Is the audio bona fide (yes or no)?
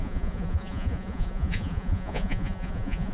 no